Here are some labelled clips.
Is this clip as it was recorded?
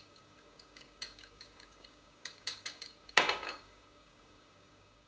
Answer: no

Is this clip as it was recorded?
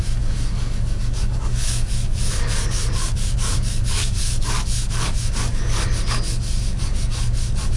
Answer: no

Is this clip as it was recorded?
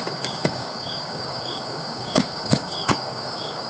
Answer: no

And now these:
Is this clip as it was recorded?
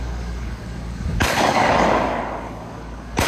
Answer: no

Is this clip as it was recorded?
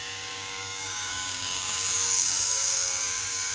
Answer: no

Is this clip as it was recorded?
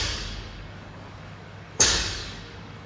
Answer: no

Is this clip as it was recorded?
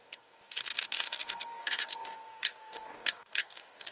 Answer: no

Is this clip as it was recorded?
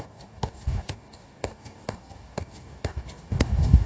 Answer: no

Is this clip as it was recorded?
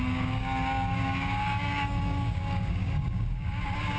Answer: no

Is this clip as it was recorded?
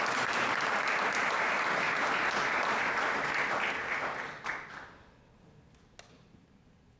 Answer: yes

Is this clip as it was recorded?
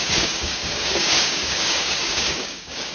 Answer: no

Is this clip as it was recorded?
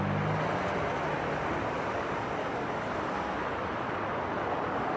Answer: yes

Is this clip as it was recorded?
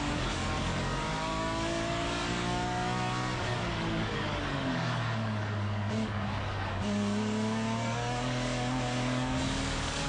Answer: no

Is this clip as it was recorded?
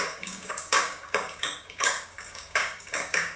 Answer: no